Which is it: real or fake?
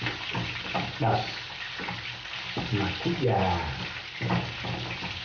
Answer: real